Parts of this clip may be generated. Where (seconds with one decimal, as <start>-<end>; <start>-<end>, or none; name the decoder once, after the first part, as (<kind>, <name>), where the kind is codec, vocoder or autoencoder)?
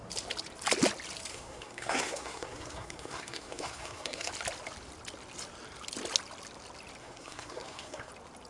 1.3-4.3 (codec, SNAC); 7.0-8.1